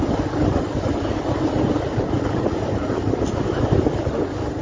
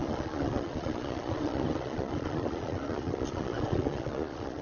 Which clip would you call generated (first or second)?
second